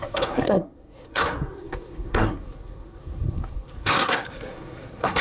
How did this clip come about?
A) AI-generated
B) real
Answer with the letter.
A